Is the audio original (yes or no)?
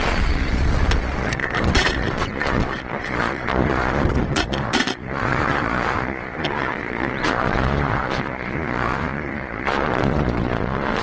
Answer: no